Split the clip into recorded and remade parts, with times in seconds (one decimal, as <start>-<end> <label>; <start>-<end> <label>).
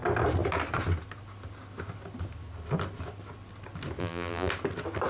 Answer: 0.0-4.0 recorded; 4.0-4.5 remade; 4.5-5.1 recorded